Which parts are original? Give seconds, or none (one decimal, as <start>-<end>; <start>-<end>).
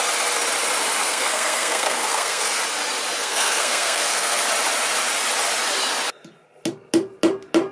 0.0-1.0; 2.6-3.2; 4.4-7.7